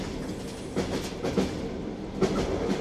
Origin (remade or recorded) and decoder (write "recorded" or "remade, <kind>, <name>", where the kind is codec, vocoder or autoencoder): recorded